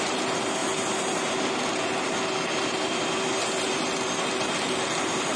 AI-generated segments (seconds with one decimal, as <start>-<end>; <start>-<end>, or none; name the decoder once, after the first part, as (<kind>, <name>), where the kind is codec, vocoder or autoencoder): none